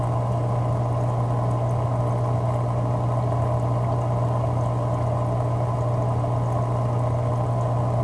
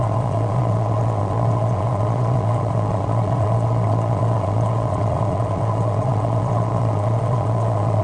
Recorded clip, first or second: first